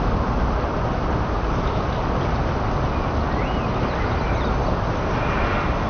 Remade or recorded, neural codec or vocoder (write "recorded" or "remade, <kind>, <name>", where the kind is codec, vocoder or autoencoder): recorded